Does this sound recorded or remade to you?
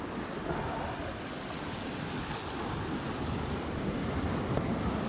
recorded